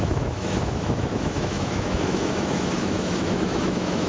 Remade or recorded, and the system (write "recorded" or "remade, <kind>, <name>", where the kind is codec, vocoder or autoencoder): remade, autoencoder, DAC-VAE